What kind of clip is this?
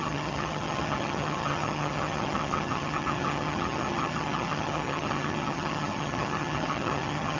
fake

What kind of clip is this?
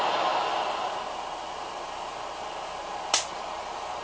real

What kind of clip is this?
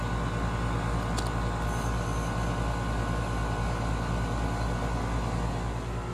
real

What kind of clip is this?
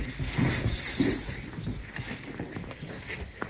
real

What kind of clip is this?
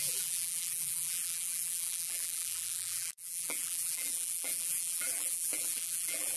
fake